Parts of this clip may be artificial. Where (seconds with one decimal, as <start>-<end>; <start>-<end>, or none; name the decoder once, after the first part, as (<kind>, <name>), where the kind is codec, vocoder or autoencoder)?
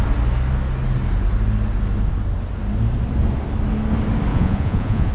4.3-5.1 (vocoder, Vocos)